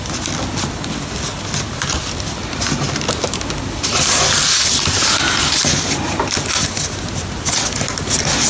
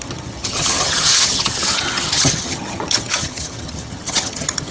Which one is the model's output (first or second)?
second